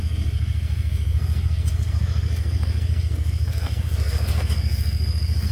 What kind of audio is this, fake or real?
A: fake